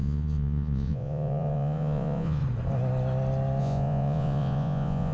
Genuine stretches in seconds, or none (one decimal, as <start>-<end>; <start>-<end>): 2.4-3.6